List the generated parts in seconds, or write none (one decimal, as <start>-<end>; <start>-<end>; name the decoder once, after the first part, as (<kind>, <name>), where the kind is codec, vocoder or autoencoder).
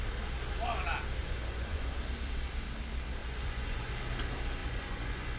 1.2-1.9 (vocoder, Vocos); 3.2-3.9; 4.6-5.4